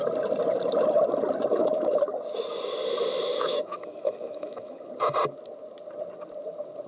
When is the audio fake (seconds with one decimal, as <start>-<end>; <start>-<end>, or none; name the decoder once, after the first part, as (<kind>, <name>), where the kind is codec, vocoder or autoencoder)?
1.5-2.0 (autoencoder, DAC-VAE); 3.3-4.9